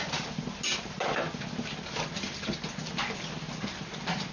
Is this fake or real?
real